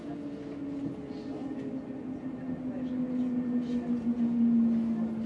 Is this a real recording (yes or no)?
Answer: yes